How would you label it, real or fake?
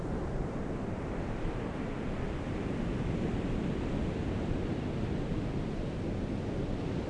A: real